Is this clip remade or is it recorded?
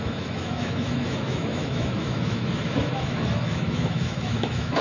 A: remade